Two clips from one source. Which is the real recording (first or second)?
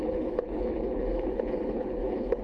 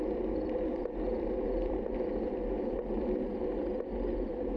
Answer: second